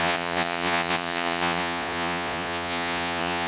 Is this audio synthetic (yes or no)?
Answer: yes